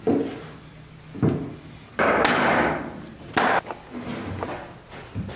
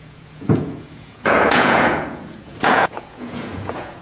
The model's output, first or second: second